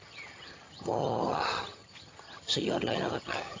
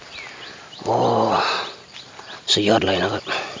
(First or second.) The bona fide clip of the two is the second